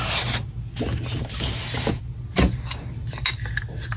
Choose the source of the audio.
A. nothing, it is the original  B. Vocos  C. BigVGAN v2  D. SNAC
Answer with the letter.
A